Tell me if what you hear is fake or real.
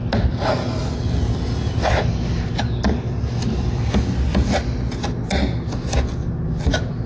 real